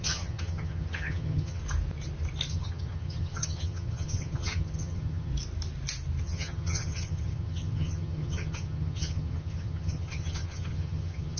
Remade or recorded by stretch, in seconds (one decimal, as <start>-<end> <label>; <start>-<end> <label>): 0.0-1.6 remade; 1.6-2.5 recorded; 2.5-5.3 remade; 5.3-6.2 recorded; 6.2-11.4 remade